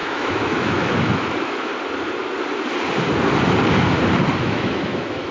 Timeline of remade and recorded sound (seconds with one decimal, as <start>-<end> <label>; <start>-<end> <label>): 0.0-1.7 remade; 1.7-4.4 recorded; 4.4-5.3 remade